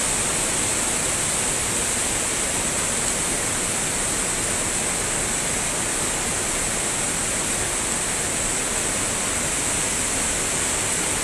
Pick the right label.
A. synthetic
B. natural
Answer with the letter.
B